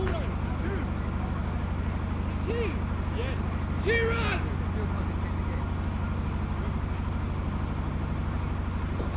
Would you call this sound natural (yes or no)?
yes